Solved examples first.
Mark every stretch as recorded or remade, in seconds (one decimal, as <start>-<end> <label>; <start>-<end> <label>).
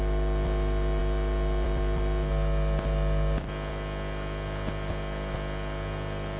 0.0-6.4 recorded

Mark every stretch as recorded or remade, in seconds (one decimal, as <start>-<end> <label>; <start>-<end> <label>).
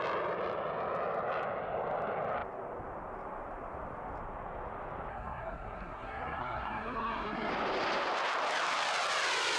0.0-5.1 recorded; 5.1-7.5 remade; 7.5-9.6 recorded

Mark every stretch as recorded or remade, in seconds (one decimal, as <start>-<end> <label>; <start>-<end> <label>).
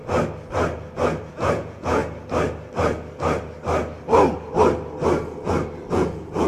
0.0-1.3 recorded; 1.3-2.0 remade; 2.0-5.9 recorded; 5.9-6.5 remade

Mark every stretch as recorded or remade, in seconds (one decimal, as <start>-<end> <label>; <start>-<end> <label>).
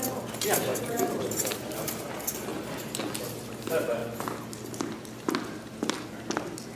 0.0-0.7 recorded; 0.7-2.1 remade; 2.1-6.8 recorded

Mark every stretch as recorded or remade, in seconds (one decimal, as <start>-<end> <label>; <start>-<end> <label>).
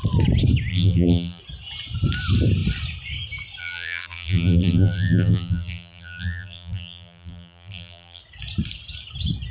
0.0-0.7 recorded; 0.7-1.4 remade; 1.4-3.6 recorded; 3.6-8.2 remade; 8.2-9.5 recorded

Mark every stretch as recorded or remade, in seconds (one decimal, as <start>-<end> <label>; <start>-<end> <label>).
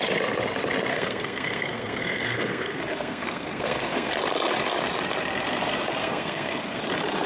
0.0-0.9 recorded; 0.9-4.1 remade; 4.1-6.0 recorded; 6.0-6.8 remade; 6.8-7.3 recorded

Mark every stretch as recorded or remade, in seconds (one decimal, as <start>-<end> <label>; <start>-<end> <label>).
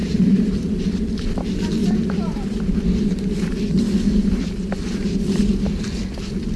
0.0-0.8 remade; 0.8-1.8 recorded; 1.8-5.8 remade; 5.8-6.6 recorded